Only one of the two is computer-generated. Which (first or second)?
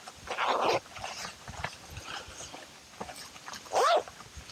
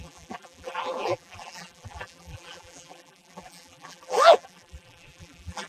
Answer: second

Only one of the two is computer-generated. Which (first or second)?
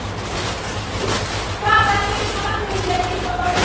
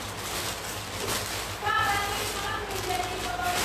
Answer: first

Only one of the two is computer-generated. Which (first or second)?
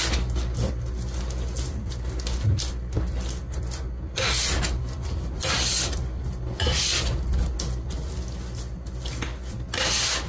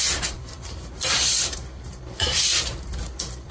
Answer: second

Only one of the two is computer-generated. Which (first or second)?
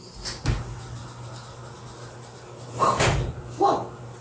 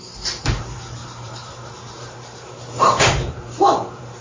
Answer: second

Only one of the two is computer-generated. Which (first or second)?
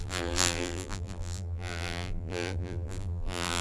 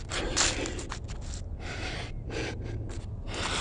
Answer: first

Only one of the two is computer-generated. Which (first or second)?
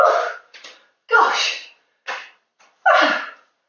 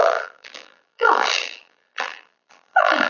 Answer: second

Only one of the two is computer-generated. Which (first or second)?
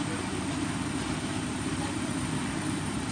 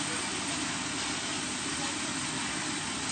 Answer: first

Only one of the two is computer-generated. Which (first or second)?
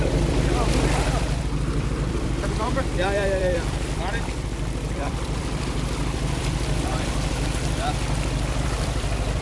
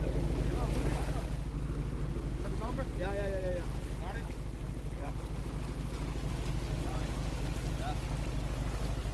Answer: first